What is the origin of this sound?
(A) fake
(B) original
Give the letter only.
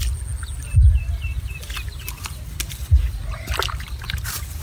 B